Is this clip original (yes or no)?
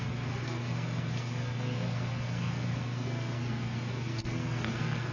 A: no